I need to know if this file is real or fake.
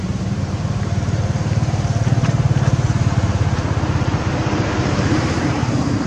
fake